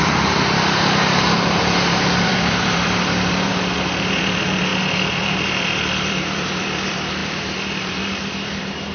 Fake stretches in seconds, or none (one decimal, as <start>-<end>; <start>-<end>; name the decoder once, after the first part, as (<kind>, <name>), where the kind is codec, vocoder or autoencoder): 0.0-8.9 (vocoder, BigVGAN v2)